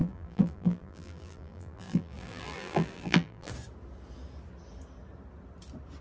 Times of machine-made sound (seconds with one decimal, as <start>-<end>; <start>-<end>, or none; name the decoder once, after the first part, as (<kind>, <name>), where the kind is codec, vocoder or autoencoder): 0.0-3.5 (vocoder, BigVGAN v2)